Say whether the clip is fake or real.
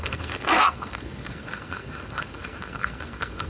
fake